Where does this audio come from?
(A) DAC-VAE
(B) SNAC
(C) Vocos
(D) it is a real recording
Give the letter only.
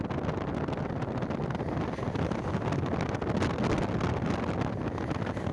D